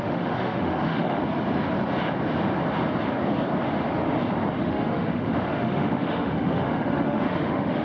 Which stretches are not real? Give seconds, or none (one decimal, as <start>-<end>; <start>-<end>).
0.0-1.2; 4.6-7.8